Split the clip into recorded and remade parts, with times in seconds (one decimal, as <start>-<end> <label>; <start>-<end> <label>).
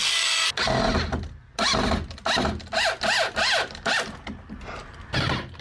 0.0-5.6 recorded